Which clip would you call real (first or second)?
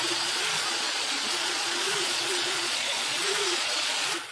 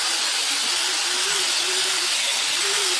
second